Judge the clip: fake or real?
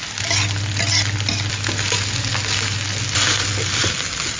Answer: real